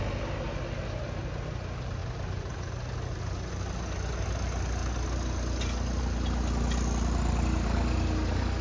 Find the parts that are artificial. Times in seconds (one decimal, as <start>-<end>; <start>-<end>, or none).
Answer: none